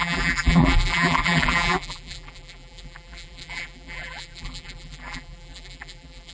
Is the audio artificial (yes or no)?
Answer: yes